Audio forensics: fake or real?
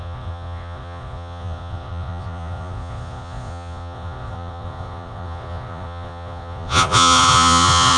fake